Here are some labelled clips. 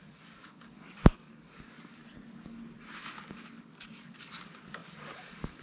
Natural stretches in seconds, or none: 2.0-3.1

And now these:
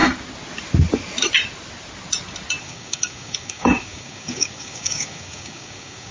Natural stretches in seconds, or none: 0.0-2.6

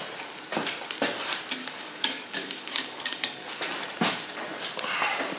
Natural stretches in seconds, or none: 0.0-1.6; 3.5-5.4

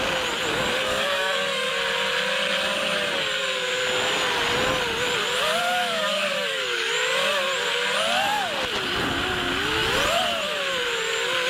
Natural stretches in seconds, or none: 0.0-0.8; 1.7-5.6; 6.9-11.5

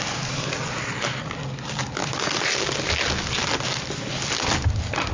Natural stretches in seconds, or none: 0.0-5.1

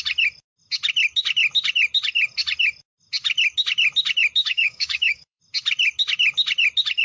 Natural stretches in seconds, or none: 0.0-4.4; 5.4-7.0